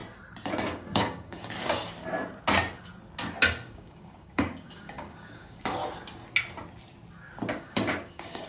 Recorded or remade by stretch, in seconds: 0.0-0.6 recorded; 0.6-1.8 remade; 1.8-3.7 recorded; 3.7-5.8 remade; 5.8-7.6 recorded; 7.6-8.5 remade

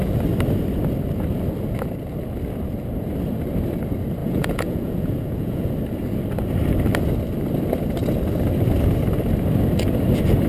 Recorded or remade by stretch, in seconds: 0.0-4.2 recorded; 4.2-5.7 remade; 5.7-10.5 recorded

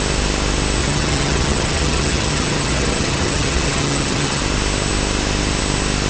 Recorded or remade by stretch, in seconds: 0.0-0.8 recorded; 0.8-4.4 remade; 4.4-6.1 recorded

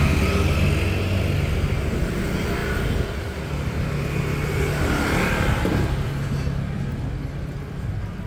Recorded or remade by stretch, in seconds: 0.0-8.3 recorded